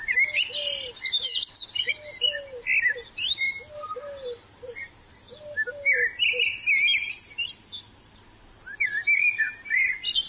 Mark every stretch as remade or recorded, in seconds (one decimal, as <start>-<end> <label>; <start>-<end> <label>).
0.0-10.3 recorded

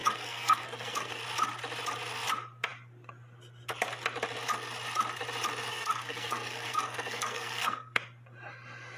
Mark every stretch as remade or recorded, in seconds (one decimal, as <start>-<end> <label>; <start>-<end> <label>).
0.0-1.2 remade; 1.2-5.7 recorded; 5.7-8.0 remade; 8.0-9.0 recorded

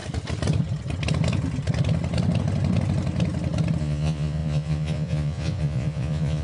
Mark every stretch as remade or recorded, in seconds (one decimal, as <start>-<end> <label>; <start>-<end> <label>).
0.0-3.8 recorded; 3.8-6.4 remade

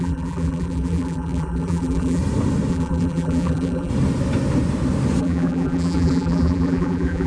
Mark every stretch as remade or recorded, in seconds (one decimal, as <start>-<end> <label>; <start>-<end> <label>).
0.0-2.2 remade; 2.2-2.7 recorded; 2.7-3.9 remade; 3.9-5.2 recorded; 5.2-7.3 remade

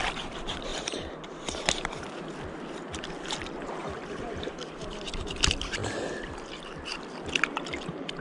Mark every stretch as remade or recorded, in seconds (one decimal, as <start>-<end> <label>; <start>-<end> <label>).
0.0-0.7 recorded; 0.7-2.0 remade; 2.0-3.8 recorded; 3.8-4.5 remade; 4.5-8.2 recorded